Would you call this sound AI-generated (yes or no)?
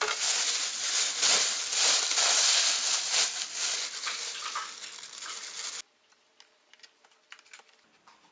no